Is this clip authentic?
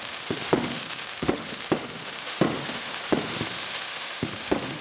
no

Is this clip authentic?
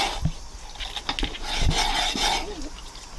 yes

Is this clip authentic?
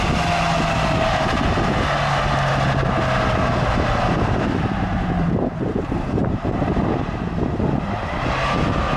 yes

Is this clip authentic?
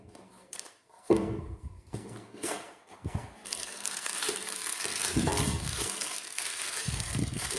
no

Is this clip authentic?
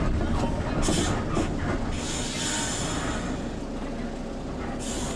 yes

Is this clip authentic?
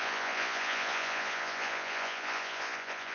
no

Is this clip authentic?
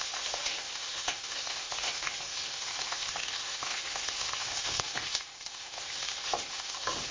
no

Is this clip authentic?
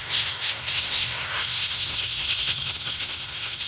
no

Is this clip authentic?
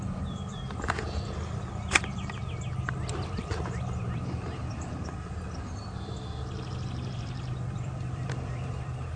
no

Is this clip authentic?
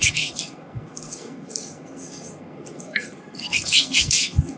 no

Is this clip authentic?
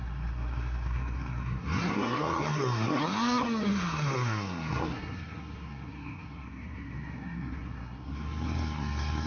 no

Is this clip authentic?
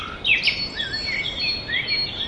yes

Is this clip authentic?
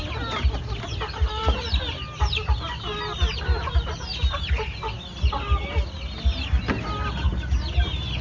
yes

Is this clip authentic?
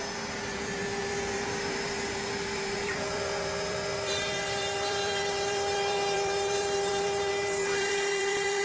no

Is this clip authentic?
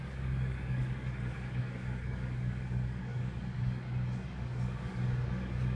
no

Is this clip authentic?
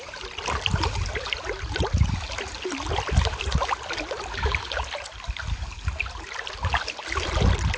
yes